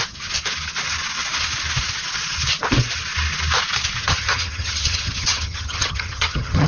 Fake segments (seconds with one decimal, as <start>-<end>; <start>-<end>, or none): 4.0-6.7